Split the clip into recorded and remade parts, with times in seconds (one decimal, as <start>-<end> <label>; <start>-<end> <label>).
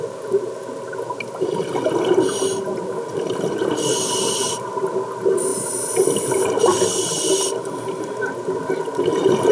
0.0-9.5 recorded